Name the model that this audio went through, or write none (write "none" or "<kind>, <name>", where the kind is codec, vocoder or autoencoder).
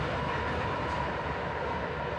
none